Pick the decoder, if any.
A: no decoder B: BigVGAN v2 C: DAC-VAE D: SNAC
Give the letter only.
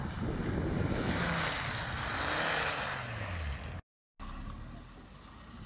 A